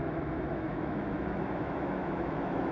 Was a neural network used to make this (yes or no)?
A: yes